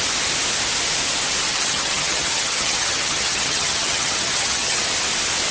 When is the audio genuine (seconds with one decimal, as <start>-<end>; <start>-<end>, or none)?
0.0-1.5; 4.8-5.5